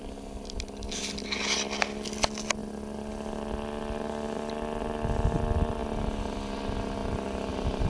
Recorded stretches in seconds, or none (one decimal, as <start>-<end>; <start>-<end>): 0.0-7.9